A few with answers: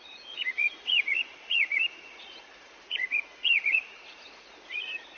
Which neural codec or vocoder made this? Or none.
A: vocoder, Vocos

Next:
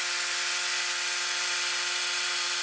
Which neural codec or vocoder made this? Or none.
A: none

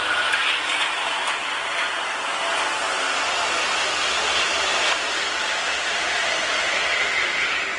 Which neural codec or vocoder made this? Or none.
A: none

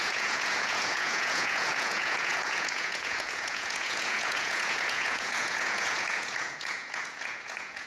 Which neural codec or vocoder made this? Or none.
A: vocoder, Vocos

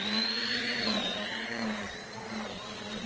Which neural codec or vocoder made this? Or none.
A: vocoder, Vocos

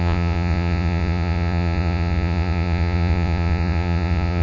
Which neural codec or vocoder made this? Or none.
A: vocoder, Vocos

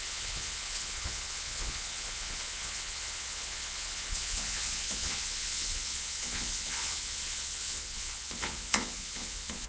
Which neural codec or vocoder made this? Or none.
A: vocoder, Vocos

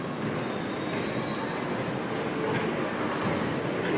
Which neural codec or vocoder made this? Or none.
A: none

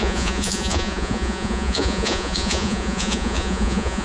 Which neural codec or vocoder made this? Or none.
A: vocoder, Vocos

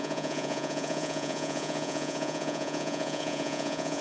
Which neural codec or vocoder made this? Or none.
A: vocoder, Vocos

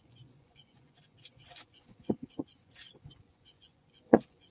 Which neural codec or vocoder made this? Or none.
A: vocoder, Vocos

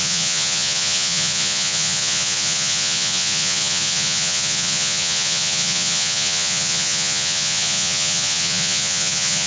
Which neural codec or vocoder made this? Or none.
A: vocoder, Vocos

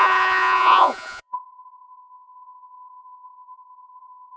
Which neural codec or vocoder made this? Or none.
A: vocoder, Vocos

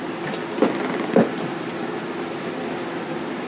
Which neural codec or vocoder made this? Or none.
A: none